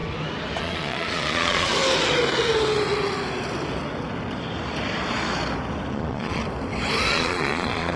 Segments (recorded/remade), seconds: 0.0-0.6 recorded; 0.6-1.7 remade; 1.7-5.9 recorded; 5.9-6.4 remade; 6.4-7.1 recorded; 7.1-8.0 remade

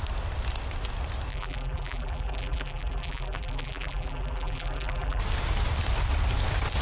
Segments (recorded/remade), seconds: 0.0-1.3 recorded; 1.3-5.2 remade; 5.2-6.8 recorded

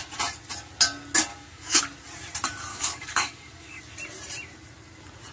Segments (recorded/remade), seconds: 0.0-1.3 recorded; 1.3-1.8 remade; 1.8-2.7 recorded; 2.7-3.8 remade; 3.8-5.3 recorded

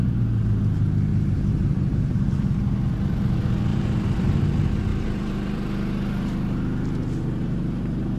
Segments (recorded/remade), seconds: 0.0-1.1 recorded; 1.1-2.6 remade; 2.6-3.7 recorded; 3.7-4.4 remade; 4.4-4.9 recorded; 4.9-8.2 remade

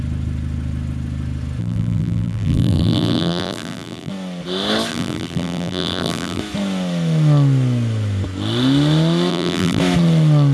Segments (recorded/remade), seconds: 0.0-1.6 recorded; 1.6-4.1 remade; 4.1-4.9 recorded; 4.9-6.4 remade; 6.4-9.3 recorded; 9.3-9.8 remade; 9.8-10.5 recorded

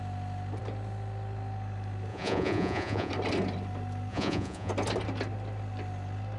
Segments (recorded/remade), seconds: 0.0-2.1 recorded; 2.1-3.1 remade; 3.1-4.1 recorded; 4.1-4.7 remade; 4.7-6.4 recorded

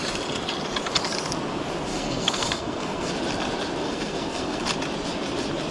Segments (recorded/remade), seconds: 0.0-1.9 recorded; 1.9-3.1 remade; 3.1-3.8 recorded; 3.8-4.6 remade; 4.6-5.7 recorded